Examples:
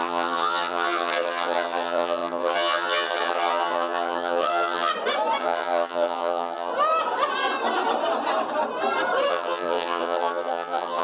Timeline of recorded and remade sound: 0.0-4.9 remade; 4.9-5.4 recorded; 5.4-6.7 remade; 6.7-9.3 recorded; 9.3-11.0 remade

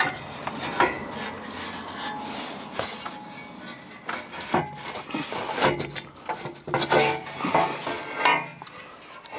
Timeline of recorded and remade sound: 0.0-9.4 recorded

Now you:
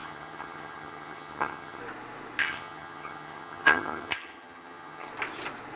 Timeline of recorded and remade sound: 0.0-1.8 remade; 1.8-2.4 recorded; 2.4-5.1 remade; 5.1-5.8 recorded

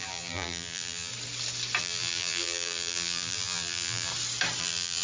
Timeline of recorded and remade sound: 0.0-1.1 remade; 1.1-1.8 recorded; 1.8-4.1 remade; 4.1-4.6 recorded; 4.6-5.0 remade

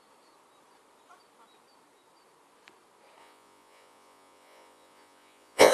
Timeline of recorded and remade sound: 0.0-3.2 recorded; 3.2-5.7 remade

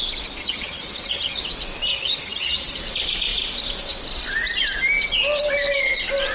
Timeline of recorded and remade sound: 0.0-0.4 recorded; 0.4-1.4 remade; 1.4-1.9 recorded; 1.9-2.8 remade; 2.8-6.3 recorded

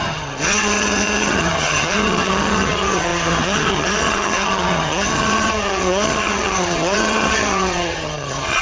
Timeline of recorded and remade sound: 0.0-8.6 remade